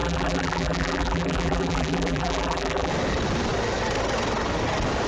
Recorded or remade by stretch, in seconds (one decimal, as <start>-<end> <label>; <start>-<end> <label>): 0.0-2.9 remade; 2.9-5.1 recorded